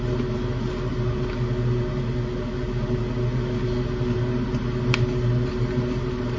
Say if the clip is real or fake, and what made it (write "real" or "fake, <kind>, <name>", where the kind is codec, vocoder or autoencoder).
real